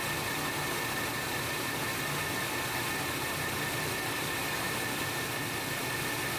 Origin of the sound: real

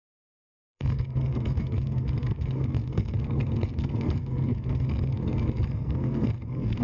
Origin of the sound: fake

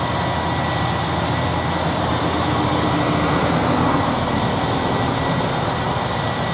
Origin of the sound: real